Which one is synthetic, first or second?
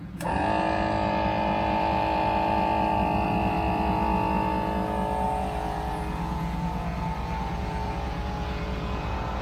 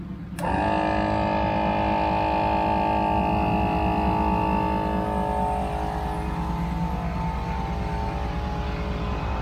first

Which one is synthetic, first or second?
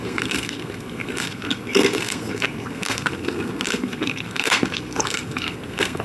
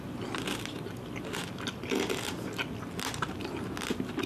first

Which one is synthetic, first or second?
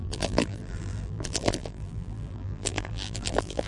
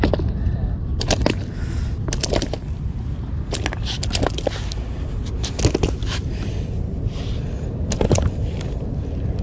first